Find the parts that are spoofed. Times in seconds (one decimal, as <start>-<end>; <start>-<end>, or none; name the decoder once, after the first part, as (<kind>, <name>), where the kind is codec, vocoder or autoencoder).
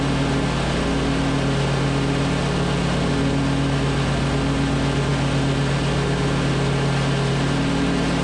none